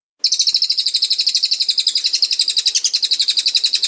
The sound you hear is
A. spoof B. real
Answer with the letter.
B